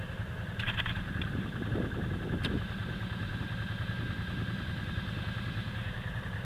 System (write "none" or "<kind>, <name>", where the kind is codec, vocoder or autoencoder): vocoder, BigVGAN v2